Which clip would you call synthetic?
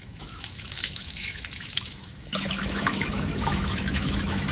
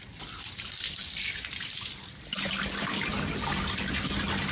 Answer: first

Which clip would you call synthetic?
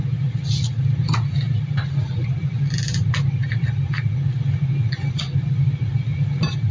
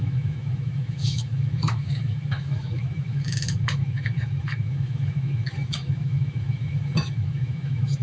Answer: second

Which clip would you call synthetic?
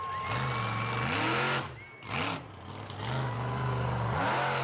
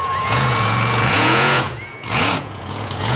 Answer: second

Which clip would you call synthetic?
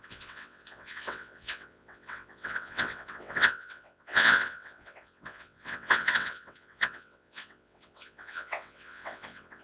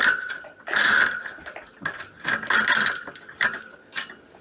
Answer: first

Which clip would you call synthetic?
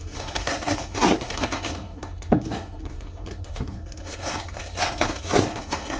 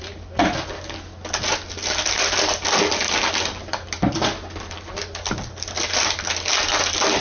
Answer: first